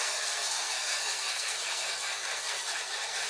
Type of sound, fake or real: fake